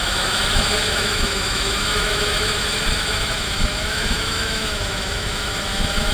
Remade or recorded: remade